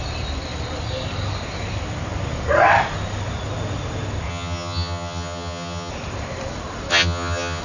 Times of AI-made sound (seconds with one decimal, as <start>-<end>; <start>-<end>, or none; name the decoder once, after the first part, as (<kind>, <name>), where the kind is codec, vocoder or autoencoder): 4.3-5.9 (vocoder, HiFi-GAN); 6.9-7.6